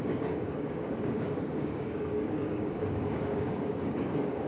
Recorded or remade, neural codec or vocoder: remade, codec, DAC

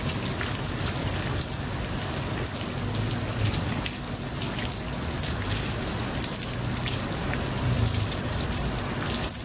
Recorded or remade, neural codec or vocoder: recorded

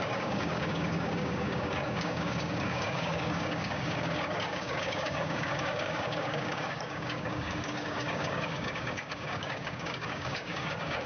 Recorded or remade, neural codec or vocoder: remade, codec, DAC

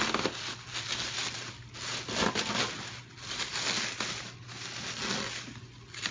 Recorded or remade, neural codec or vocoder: recorded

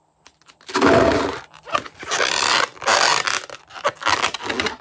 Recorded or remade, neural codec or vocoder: recorded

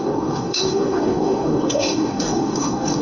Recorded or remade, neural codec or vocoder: remade, codec, DAC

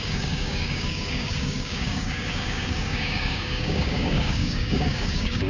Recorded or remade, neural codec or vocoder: remade, codec, DAC